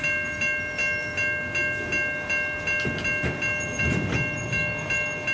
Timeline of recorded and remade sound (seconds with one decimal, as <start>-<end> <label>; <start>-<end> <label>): 0.0-5.3 recorded